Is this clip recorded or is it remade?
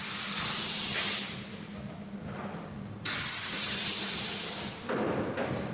recorded